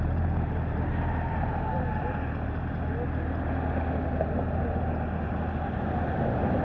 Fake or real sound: real